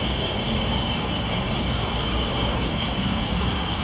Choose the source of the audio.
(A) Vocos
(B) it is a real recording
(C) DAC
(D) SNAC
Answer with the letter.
C